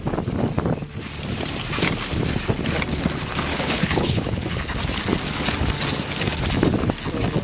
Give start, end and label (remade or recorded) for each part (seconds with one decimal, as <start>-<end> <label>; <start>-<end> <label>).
0.0-3.5 recorded; 3.5-4.6 remade; 4.6-7.4 recorded